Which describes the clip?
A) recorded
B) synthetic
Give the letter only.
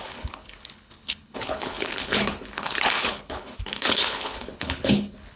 B